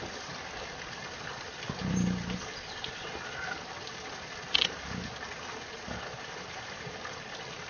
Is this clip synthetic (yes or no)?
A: no